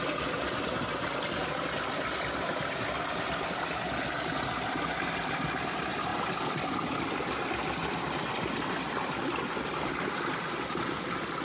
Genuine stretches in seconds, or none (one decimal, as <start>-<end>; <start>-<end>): 0.0-9.9; 11.0-11.4